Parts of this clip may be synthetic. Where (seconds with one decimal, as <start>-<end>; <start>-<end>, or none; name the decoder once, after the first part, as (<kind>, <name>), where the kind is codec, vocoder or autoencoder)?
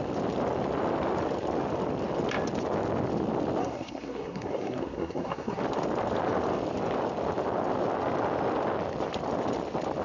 3.6-5.6 (codec, SNAC)